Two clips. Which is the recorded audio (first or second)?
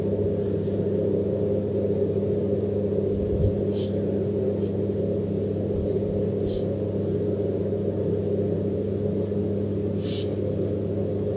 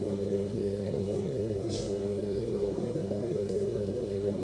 first